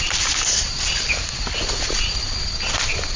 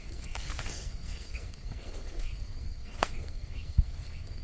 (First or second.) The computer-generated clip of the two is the second